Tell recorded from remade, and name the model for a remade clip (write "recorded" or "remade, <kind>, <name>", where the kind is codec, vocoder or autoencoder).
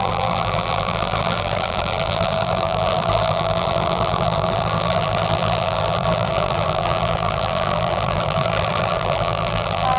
remade, vocoder, BigVGAN v2